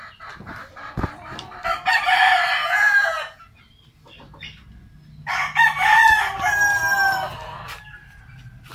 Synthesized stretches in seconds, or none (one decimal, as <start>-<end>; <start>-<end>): 2.6-3.6